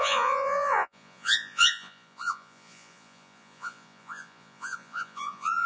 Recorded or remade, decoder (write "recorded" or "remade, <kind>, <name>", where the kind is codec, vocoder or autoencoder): remade, vocoder, Vocos